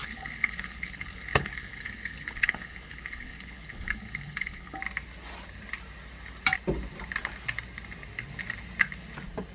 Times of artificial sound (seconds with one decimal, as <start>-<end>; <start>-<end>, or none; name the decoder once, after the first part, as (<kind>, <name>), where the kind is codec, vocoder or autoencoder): 0.0-4.8 (codec, HILCodec)